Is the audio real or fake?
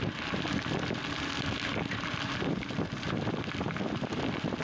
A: fake